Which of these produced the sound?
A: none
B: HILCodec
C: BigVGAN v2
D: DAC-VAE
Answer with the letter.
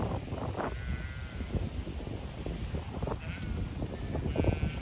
A